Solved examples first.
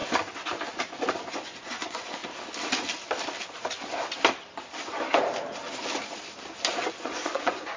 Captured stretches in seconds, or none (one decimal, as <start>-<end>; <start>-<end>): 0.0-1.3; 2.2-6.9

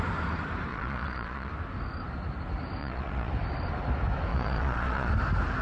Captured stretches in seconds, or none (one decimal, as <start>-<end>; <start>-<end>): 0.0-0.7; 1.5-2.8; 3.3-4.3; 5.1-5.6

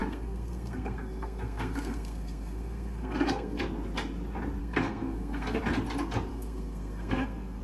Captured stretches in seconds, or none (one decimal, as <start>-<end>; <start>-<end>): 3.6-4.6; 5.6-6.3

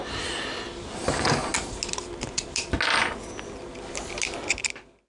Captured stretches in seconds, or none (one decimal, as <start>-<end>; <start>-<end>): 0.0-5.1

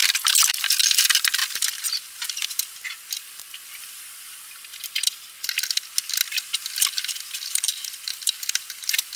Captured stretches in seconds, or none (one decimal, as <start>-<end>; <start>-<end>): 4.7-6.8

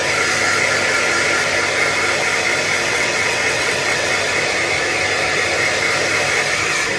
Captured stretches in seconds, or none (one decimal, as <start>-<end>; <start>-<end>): 0.0-2.9; 4.1-7.0

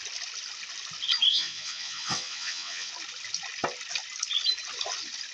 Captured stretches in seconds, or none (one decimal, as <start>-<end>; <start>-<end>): 0.0-1.3; 2.9-5.3

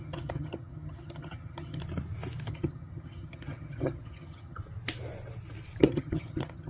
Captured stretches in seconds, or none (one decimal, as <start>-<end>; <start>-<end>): 1.8-2.5; 4.6-5.8